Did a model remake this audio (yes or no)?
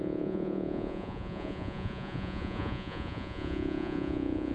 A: yes